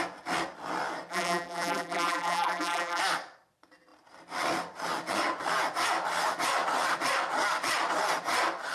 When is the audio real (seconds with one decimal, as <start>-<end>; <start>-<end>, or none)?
0.0-1.1; 3.0-8.7